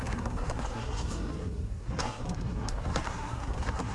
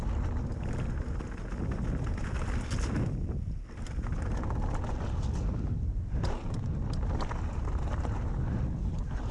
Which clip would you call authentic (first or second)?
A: second